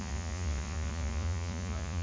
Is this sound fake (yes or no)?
yes